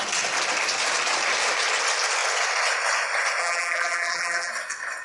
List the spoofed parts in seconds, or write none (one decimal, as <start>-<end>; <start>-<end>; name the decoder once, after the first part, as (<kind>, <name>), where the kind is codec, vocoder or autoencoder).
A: 3.4-4.5 (vocoder, BigVGAN v2)